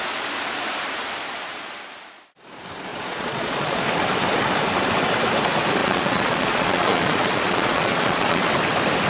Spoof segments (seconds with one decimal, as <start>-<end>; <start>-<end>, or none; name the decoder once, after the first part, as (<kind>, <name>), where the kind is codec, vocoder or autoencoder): 2.9-3.8 (vocoder, Vocos); 5.8-8.5